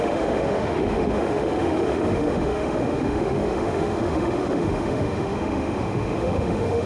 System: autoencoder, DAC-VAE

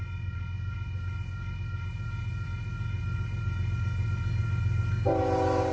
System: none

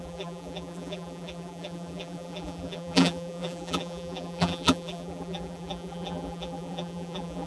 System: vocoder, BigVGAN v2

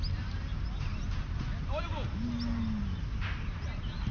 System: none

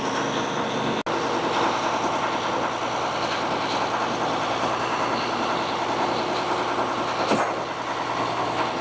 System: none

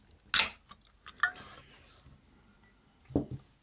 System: none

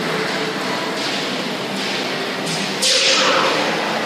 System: none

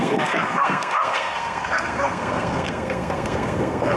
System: codec, SNAC